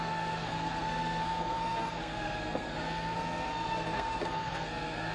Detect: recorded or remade remade